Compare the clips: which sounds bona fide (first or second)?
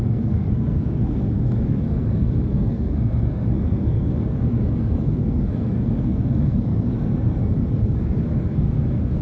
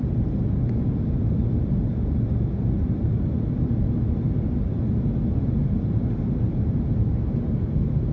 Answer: second